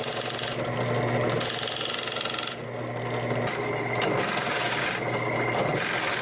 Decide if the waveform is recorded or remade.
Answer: recorded